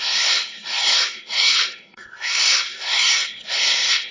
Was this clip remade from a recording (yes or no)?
yes